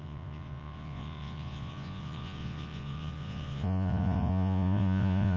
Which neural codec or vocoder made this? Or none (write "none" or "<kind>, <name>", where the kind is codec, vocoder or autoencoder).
vocoder, Vocos